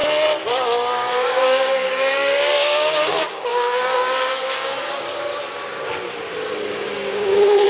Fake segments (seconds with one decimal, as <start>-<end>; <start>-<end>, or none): 1.1-5.3; 6.5-7.7